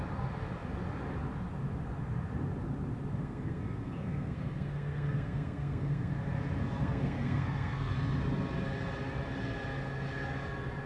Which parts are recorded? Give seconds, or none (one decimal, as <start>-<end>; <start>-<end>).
0.0-3.2; 6.1-6.8; 7.9-10.9